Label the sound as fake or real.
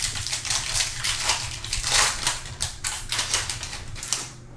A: fake